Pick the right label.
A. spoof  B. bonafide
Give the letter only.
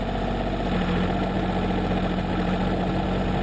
B